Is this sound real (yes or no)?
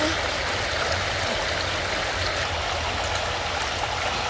yes